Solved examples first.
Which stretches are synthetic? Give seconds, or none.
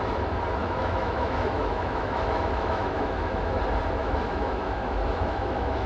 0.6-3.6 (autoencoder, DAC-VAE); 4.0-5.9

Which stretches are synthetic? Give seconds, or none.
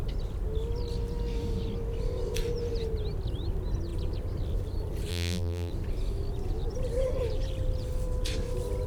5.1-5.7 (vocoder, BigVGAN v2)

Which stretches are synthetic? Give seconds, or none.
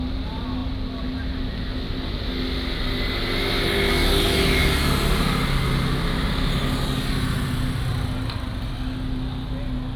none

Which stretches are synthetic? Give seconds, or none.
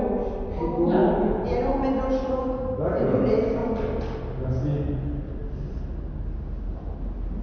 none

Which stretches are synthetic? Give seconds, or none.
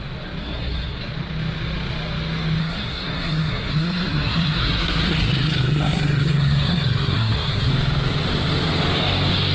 0.4-1.0 (codec, SNAC); 2.6-7.7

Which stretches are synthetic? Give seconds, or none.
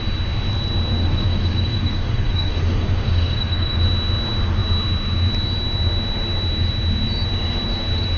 1.0-3.8 (autoencoder, DAC-VAE)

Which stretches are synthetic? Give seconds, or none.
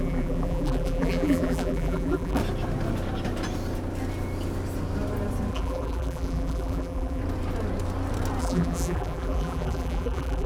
0.0-2.4 (vocoder, BigVGAN v2); 5.5-7.2; 8.4-10.5